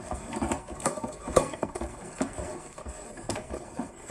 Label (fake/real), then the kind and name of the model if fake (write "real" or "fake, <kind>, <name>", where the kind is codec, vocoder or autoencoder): fake, codec, SNAC